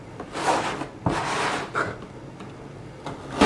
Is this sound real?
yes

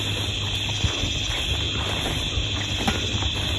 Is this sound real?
yes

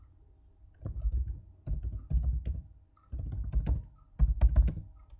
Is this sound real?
yes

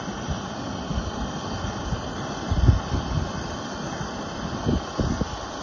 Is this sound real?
yes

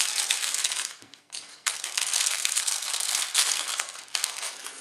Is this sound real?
no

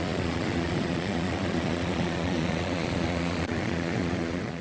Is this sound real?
no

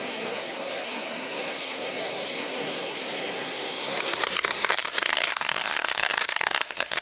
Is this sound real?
no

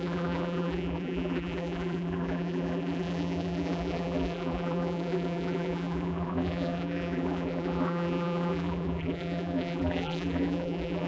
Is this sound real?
no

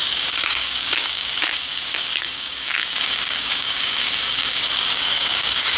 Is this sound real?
no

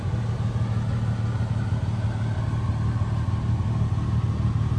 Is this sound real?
yes